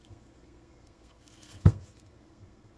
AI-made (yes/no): yes